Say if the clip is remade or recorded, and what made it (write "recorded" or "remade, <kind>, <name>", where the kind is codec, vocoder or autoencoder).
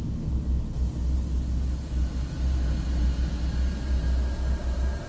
recorded